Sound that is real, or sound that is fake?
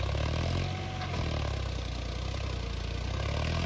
real